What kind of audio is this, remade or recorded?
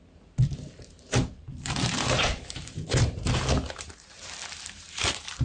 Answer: remade